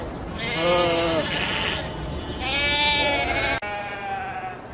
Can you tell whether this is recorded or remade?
recorded